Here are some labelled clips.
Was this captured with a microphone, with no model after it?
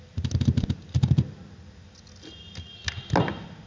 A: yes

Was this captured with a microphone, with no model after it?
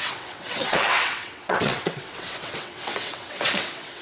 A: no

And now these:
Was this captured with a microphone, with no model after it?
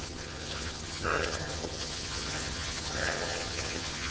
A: no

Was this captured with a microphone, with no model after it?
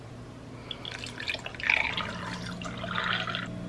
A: yes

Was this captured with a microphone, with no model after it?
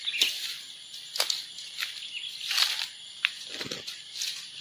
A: yes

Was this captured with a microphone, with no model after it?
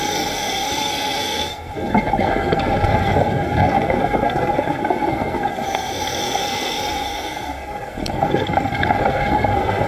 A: no